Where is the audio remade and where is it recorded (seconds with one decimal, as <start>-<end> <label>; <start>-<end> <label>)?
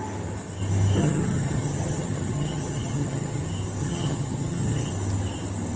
0.0-1.0 recorded; 1.0-3.4 remade; 3.4-3.8 recorded; 3.8-4.9 remade; 4.9-5.8 recorded